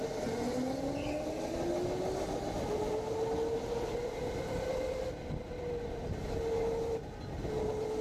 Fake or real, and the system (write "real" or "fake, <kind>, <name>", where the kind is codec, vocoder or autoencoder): real